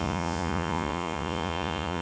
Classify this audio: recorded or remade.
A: remade